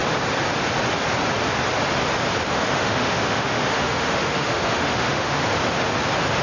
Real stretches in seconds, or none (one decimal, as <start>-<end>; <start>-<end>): 0.0-2.5; 5.4-6.4